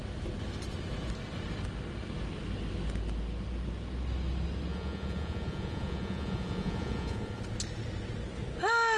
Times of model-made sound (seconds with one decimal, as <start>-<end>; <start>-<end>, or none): 4.7-7.4